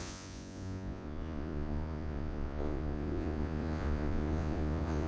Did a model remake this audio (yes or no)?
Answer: yes